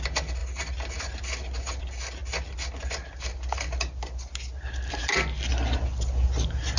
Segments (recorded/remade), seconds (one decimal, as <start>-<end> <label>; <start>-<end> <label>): 0.0-6.8 recorded